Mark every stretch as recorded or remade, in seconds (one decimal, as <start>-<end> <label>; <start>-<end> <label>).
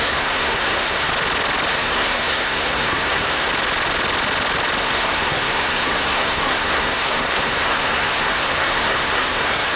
0.0-1.1 remade; 1.1-1.7 recorded; 1.7-3.5 remade; 3.5-4.8 recorded; 4.8-9.8 remade